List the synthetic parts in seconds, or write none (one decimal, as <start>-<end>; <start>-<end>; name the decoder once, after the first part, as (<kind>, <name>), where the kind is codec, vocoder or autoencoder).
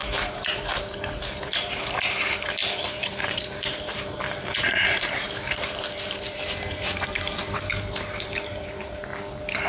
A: 0.0-9.1 (vocoder, BigVGAN v2)